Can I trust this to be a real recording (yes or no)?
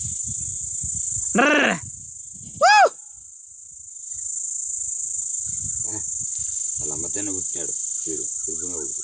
yes